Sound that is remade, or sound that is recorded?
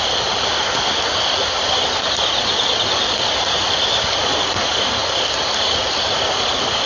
recorded